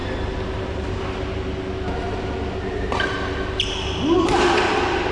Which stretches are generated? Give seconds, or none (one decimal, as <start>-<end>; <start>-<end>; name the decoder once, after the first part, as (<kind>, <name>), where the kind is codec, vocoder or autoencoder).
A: none